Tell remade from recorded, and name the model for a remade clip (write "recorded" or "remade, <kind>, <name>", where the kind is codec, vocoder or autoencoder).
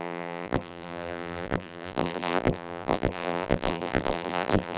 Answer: remade, vocoder, BigVGAN v2